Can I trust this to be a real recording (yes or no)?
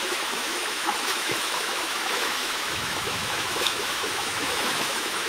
no